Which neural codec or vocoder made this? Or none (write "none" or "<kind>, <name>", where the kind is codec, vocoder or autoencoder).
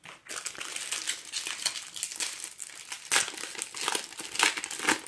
none